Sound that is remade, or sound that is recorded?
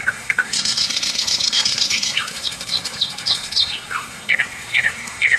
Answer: remade